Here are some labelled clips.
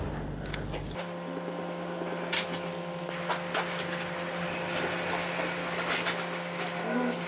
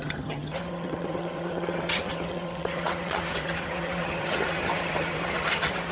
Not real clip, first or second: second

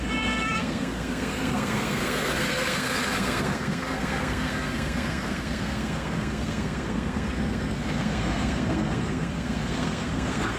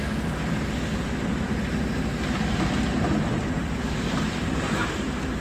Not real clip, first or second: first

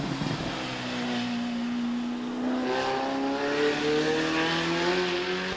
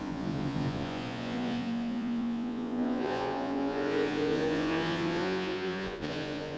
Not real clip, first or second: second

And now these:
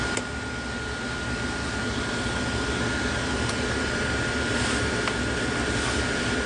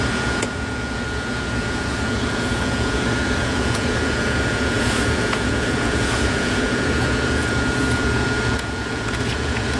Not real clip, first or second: second